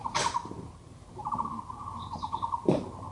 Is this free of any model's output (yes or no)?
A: yes